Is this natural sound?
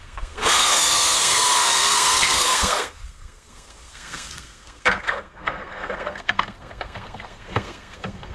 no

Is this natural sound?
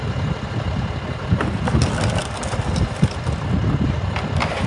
yes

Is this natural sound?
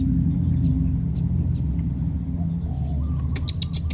yes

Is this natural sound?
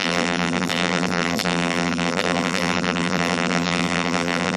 no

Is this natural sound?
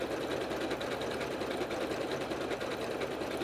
yes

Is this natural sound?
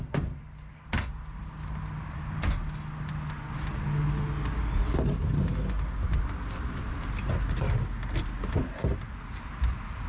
yes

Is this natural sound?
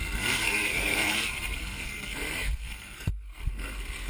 no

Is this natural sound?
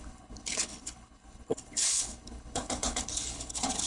no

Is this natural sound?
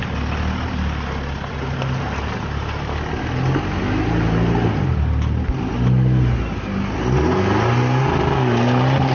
yes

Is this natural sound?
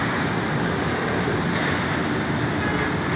yes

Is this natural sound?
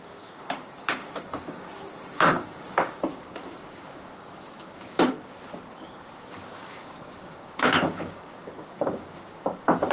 no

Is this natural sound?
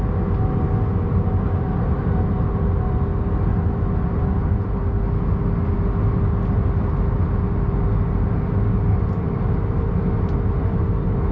yes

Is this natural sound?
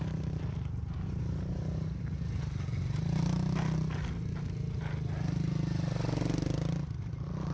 yes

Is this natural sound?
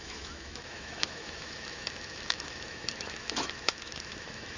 no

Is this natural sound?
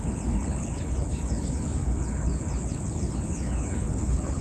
no